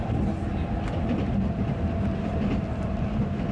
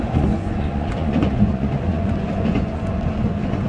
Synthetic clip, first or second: second